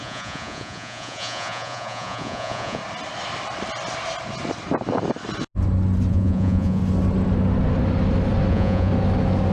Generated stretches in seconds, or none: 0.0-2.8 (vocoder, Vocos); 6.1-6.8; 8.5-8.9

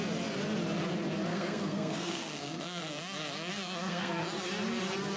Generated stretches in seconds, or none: 1.3-2.8 (codec, SNAC); 3.5-4.1

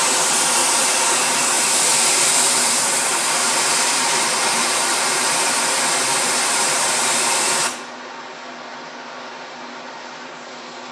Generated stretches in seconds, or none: 0.6-5.6 (vocoder, BigVGAN v2); 6.1-7.6

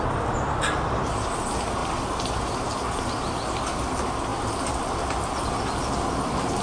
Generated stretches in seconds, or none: none

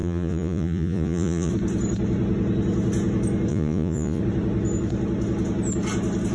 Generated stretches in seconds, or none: 0.0-1.5 (vocoder, Vocos); 3.5-4.2